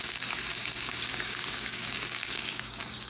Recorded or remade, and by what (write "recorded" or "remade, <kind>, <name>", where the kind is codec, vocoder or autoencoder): remade, codec, DAC